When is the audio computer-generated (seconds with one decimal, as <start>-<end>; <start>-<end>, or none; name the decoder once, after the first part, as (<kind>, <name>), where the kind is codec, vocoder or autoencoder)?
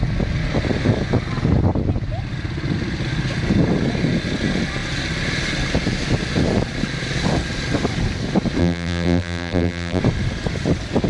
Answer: 8.6-10.0 (vocoder, BigVGAN v2)